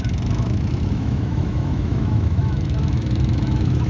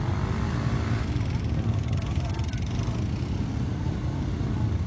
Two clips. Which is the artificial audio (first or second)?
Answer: first